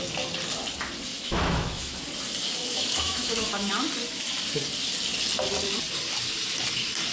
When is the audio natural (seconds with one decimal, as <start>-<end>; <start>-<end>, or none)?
0.0-1.1; 2.0-2.6; 3.7-7.1